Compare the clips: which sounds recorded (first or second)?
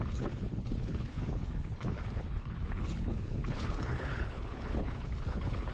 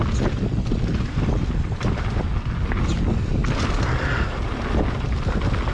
second